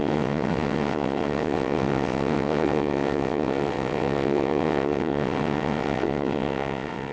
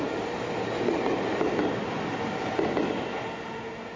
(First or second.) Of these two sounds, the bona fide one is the second